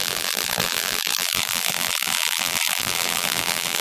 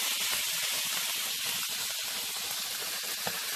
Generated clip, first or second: first